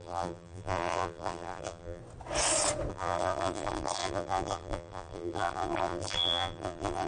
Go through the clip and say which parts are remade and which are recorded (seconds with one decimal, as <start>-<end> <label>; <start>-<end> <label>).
0.0-2.0 remade; 2.0-2.9 recorded; 2.9-7.1 remade